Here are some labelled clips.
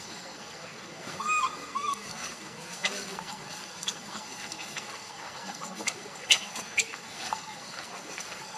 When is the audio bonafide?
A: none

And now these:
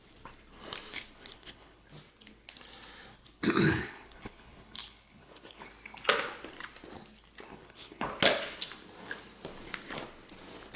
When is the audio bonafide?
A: 0.0-0.9; 1.9-3.1; 5.7-7.5; 8.1-10.8

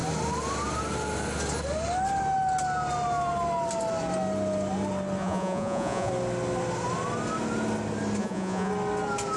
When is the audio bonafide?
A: 0.0-5.2; 6.1-8.2; 8.7-9.4

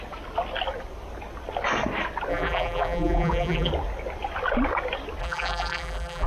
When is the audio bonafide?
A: 0.0-2.3; 3.7-5.2

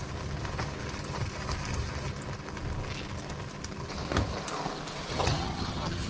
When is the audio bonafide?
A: 0.0-5.1

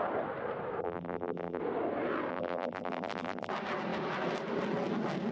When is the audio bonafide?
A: 0.0-0.8; 1.6-2.3; 3.5-5.3

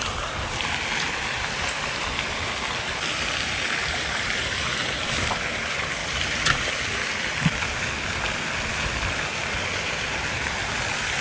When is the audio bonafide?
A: 0.0-3.8; 4.8-11.2

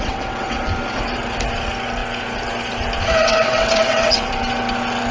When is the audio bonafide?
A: 0.6-3.2; 4.4-5.1